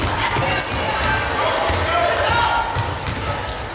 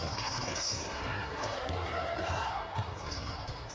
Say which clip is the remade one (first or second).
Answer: second